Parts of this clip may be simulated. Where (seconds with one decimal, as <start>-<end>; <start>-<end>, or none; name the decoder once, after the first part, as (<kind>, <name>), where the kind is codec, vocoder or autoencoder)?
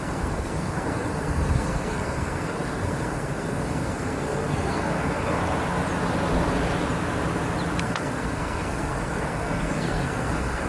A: 0.0-5.4 (codec, SNAC); 7.8-10.7